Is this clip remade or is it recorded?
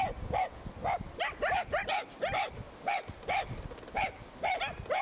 recorded